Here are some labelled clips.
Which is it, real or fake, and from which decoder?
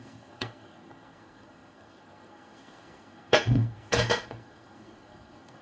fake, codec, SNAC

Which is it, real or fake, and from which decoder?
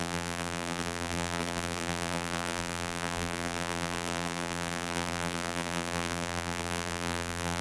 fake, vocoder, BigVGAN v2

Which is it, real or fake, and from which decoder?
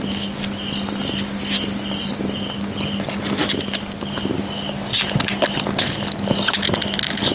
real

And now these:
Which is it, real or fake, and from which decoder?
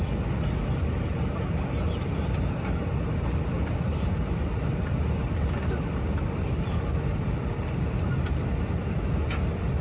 real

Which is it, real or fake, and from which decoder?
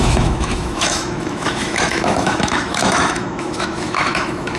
fake, autoencoder, DAC-VAE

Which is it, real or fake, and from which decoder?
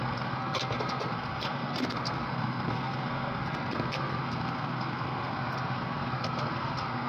fake, codec, SNAC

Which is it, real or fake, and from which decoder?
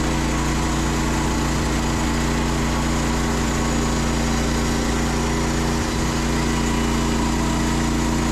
real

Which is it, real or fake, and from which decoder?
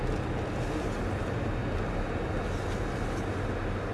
real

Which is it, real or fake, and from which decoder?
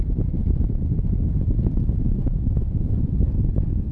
real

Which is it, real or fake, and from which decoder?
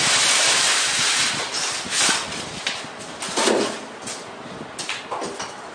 real